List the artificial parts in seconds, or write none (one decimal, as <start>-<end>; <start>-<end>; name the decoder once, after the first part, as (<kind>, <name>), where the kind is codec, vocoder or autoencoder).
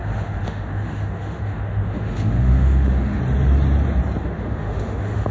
0.0-3.2 (autoencoder, DAC-VAE); 4.2-5.3